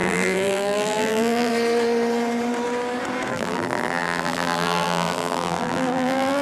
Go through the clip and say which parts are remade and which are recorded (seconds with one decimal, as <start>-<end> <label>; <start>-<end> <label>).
0.0-1.5 remade; 1.5-3.3 recorded; 3.3-6.4 remade